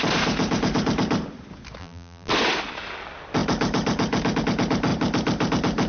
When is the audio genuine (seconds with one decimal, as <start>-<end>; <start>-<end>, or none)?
0.0-1.8; 2.3-5.9